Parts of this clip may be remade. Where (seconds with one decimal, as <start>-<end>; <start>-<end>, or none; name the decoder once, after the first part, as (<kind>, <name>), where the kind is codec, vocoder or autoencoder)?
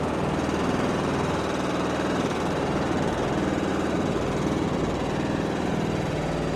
none